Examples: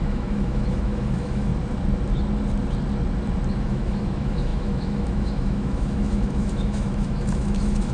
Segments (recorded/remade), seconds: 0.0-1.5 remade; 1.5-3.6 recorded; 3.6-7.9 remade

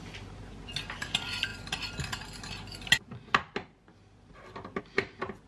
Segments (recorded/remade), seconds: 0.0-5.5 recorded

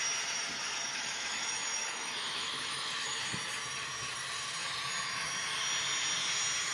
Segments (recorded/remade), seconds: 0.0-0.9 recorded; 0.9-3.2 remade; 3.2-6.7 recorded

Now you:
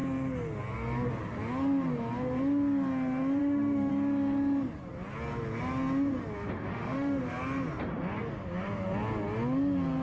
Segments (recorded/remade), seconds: 0.0-3.4 recorded; 3.4-3.9 remade; 3.9-6.7 recorded; 6.7-7.2 remade; 7.2-10.0 recorded